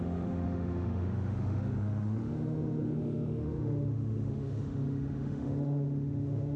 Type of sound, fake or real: fake